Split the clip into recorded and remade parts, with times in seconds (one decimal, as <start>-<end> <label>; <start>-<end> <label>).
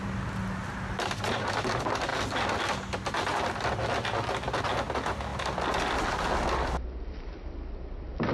0.0-8.3 recorded